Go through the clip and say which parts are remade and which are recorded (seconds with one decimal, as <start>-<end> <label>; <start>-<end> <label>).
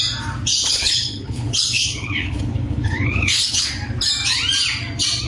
0.0-0.5 recorded; 0.5-3.7 remade; 3.7-5.3 recorded